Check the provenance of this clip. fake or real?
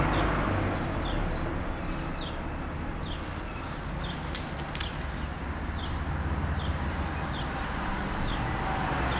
real